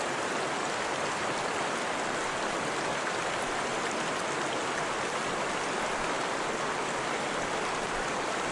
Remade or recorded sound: recorded